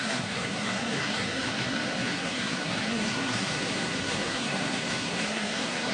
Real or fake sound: fake